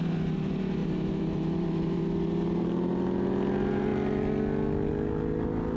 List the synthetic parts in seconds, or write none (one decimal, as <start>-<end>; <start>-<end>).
0.8-2.0